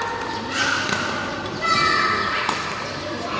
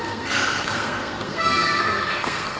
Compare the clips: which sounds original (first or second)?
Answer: first